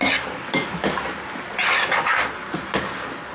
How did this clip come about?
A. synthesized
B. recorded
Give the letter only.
B